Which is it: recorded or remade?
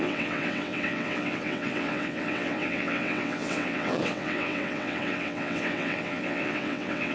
remade